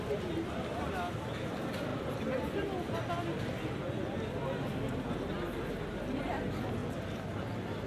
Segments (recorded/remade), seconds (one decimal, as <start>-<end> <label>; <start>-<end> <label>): 0.0-7.9 recorded